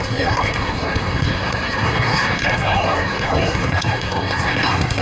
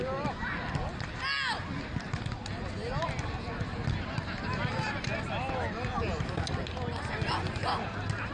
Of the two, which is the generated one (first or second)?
first